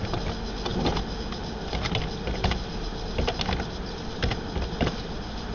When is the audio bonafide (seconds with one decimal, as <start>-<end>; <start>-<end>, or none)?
0.0-5.5